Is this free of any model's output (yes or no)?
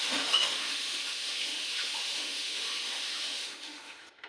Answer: no